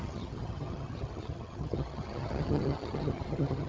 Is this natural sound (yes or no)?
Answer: no